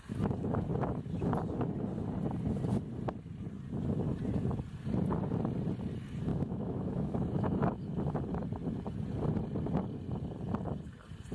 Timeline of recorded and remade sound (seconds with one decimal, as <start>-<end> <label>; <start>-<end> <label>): 0.0-6.3 recorded; 6.3-7.8 remade; 7.8-11.3 recorded